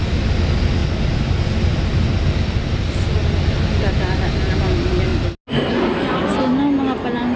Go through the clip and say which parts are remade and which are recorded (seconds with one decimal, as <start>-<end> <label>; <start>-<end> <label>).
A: 0.0-7.4 recorded